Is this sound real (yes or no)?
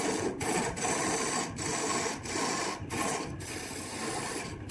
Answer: yes